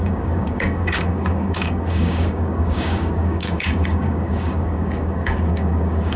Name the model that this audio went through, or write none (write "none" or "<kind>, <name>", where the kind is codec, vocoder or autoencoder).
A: codec, DAC